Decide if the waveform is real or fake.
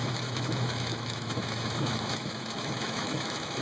fake